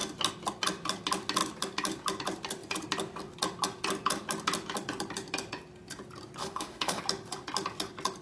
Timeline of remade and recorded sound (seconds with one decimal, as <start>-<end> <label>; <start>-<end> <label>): 0.0-6.4 recorded; 6.4-7.0 remade; 7.0-8.2 recorded